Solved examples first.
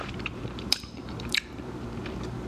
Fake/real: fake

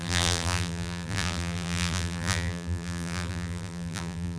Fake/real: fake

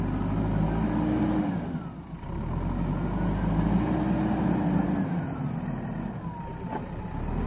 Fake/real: real